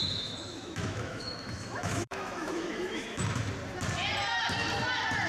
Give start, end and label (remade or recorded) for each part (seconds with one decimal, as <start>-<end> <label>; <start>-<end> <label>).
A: 0.0-3.2 remade; 3.2-5.3 recorded